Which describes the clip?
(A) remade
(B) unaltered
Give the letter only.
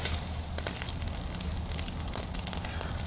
B